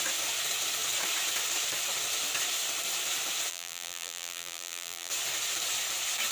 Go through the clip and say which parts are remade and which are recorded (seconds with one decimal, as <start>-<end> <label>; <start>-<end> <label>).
0.0-3.5 recorded; 3.5-5.1 remade; 5.1-6.3 recorded

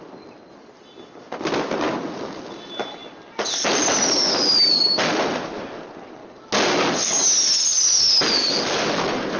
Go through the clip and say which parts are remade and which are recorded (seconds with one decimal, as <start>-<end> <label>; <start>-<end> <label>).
0.0-8.4 recorded; 8.4-9.4 remade

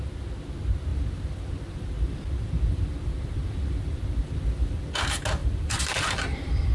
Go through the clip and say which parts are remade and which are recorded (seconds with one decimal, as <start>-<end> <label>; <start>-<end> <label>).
0.0-0.9 recorded; 0.9-4.9 remade; 4.9-5.4 recorded; 5.4-6.7 remade

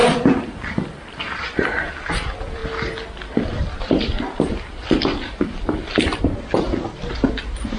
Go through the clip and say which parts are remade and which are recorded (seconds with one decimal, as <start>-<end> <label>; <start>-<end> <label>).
0.0-2.6 remade; 2.6-3.8 recorded; 3.8-7.8 remade

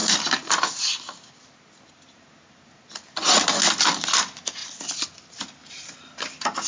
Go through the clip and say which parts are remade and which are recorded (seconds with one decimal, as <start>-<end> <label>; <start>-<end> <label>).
0.0-6.7 recorded

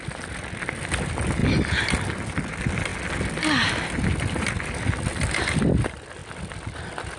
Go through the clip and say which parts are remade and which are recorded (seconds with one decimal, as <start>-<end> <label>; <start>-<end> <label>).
0.0-7.2 recorded